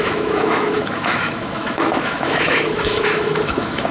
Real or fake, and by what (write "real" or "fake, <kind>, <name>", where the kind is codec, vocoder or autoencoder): fake, autoencoder, DAC-VAE